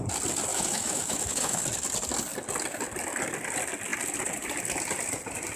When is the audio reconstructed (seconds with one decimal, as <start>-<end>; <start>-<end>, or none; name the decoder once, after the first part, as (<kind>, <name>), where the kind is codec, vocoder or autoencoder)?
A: 0.5-1.6 (autoencoder, DAC-VAE)